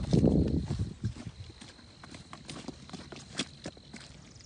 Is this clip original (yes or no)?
yes